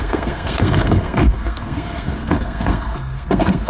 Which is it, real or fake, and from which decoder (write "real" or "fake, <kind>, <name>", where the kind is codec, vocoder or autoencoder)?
fake, codec, SNAC